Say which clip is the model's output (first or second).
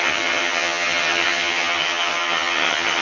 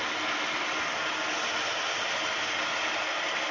first